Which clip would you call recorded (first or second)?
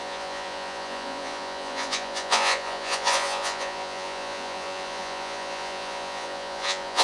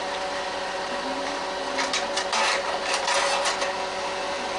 second